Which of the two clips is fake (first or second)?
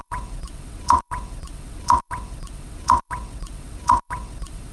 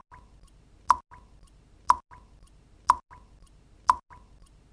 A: first